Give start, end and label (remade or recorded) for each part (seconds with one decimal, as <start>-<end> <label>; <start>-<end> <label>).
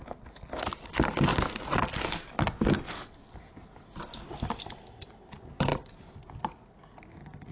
0.0-7.5 recorded